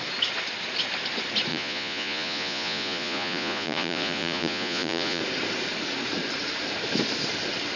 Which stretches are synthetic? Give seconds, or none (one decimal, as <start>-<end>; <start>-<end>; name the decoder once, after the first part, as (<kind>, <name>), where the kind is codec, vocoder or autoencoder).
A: 1.5-5.2 (vocoder, Vocos)